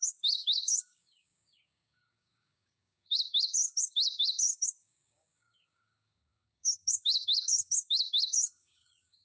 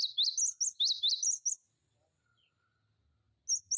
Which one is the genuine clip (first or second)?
second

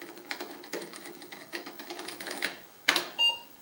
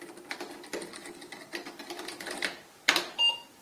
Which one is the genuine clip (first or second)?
second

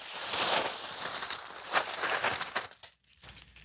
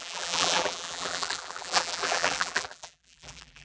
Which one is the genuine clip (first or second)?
first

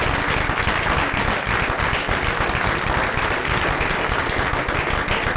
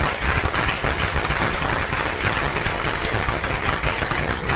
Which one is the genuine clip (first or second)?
first